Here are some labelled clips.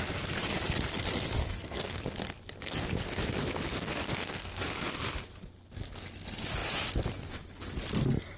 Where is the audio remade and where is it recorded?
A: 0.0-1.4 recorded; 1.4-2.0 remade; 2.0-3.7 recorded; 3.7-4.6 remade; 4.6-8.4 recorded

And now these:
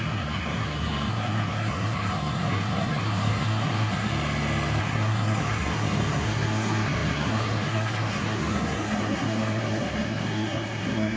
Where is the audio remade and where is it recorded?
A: 0.0-4.1 remade; 4.1-4.8 recorded; 4.8-11.2 remade

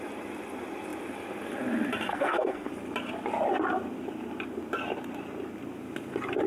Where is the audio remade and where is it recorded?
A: 0.0-2.1 recorded; 2.1-2.7 remade; 2.7-6.5 recorded

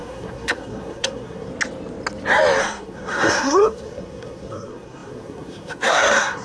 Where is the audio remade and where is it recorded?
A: 0.0-1.5 remade; 1.5-2.6 recorded; 2.6-6.4 remade

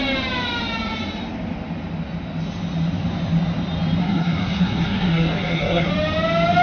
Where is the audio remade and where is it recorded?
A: 0.0-4.0 recorded; 4.0-5.9 remade; 5.9-6.6 recorded